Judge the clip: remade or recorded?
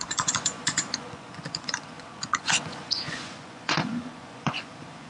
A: remade